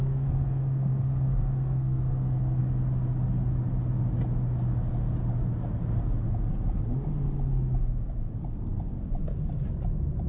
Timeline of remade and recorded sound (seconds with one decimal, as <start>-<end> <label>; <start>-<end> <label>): 0.0-2.6 remade; 2.6-10.3 recorded